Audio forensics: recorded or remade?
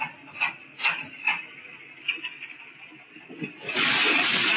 recorded